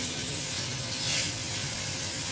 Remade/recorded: recorded